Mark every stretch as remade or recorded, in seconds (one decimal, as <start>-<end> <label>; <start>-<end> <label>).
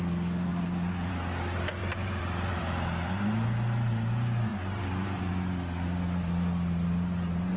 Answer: 0.0-0.5 recorded; 0.5-1.1 remade; 1.1-1.8 recorded; 1.8-2.6 remade; 2.6-4.5 recorded; 4.5-5.3 remade; 5.3-7.6 recorded